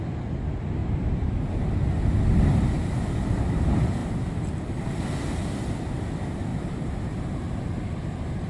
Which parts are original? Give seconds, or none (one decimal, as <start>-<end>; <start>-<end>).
0.0-0.8; 1.5-6.5